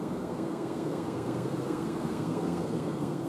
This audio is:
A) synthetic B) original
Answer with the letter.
A